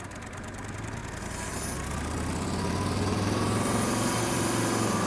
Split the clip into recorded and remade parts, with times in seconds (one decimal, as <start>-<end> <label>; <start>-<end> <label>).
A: 0.0-1.0 remade; 1.0-1.5 recorded; 1.5-5.1 remade